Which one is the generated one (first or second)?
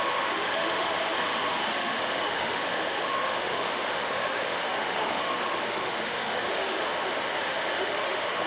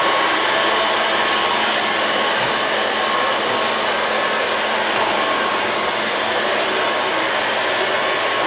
first